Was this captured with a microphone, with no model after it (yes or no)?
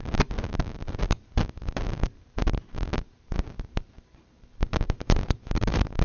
no